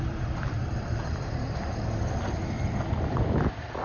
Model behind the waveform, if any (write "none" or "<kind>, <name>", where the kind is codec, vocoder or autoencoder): vocoder, BigVGAN v2